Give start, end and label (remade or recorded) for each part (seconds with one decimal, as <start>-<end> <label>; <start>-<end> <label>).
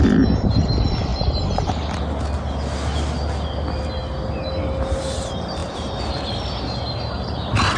0.0-7.8 recorded